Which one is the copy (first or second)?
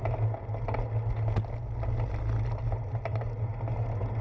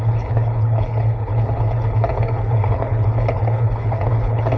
second